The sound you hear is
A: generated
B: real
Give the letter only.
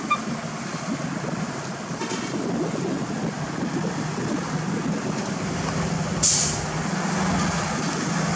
B